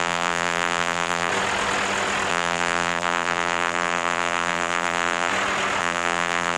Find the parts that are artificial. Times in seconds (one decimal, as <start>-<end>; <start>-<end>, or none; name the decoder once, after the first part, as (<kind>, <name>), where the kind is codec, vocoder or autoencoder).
0.0-1.3 (vocoder, BigVGAN v2); 2.3-5.3; 5.8-6.6